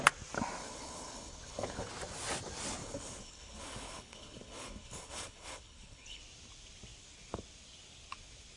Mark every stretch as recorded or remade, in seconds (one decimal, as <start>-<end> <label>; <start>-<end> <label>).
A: 0.0-0.6 recorded; 0.6-1.9 remade; 1.9-2.8 recorded; 2.8-6.2 remade; 6.2-8.6 recorded

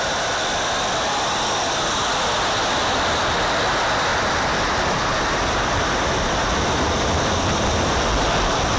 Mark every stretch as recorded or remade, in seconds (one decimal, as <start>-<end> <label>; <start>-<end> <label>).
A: 0.0-8.8 recorded

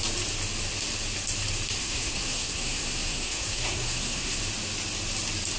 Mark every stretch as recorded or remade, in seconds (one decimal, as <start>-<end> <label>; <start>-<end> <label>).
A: 0.0-1.8 recorded; 1.8-4.4 remade; 4.4-5.6 recorded